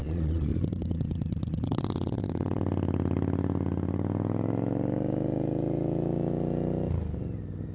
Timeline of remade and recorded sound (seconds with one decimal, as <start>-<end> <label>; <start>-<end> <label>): 0.0-2.6 remade; 2.6-7.7 recorded